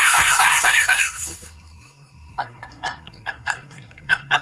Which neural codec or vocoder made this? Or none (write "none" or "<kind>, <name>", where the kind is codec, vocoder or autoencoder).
codec, SNAC